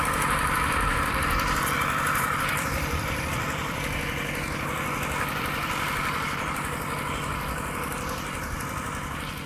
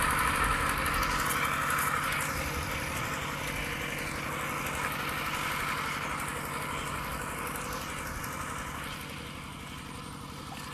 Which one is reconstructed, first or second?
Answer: first